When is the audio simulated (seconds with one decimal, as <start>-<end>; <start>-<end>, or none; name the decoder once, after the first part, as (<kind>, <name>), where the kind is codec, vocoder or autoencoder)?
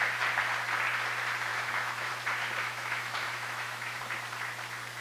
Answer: 1.5-2.1 (autoencoder, DAC-VAE); 2.6-4.0